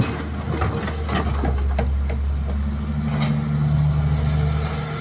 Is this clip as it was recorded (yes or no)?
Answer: yes